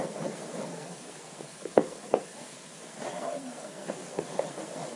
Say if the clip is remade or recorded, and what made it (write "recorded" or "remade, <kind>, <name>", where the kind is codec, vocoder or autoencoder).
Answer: remade, codec, SNAC